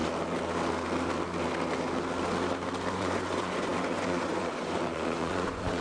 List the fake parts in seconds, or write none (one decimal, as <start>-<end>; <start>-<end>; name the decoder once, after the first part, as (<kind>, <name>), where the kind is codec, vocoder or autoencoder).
2.9-5.8 (vocoder, Vocos)

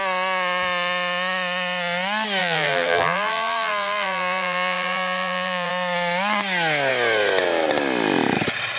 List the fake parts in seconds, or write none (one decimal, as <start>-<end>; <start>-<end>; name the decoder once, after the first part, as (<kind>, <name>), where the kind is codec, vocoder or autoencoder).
2.4-5.7 (vocoder, BigVGAN v2)

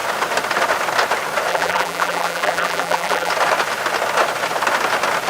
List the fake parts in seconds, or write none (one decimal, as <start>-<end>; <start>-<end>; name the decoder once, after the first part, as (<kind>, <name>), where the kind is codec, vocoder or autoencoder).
1.5-3.3 (vocoder, BigVGAN v2)

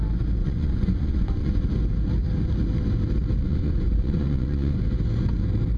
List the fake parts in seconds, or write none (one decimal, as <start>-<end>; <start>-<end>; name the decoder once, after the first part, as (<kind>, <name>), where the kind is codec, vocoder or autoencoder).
0.4-1.6 (vocoder, Vocos); 3.4-4.8

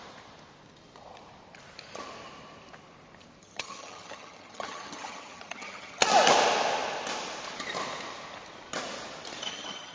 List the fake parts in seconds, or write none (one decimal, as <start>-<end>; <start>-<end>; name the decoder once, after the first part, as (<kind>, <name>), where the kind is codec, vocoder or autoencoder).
3.4-6.0 (vocoder, HiFi-GAN); 9.5-9.9